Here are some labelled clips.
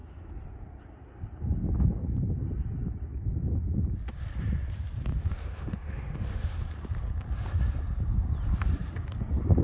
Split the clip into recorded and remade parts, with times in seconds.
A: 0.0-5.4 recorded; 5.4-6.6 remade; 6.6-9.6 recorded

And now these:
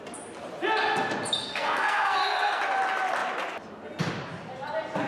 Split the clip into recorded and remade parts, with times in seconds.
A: 0.0-1.4 recorded; 1.4-2.6 remade; 2.6-5.1 recorded